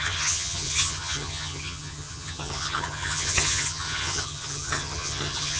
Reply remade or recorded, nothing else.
remade